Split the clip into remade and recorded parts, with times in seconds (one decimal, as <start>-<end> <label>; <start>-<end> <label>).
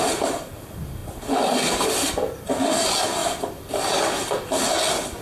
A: 0.0-5.2 recorded